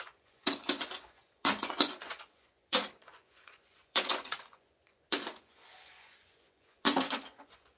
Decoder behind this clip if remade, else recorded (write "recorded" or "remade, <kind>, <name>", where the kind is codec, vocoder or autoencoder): remade, vocoder, Vocos